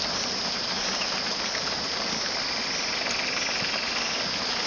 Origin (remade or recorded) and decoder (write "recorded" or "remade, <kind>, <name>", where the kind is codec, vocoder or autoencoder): recorded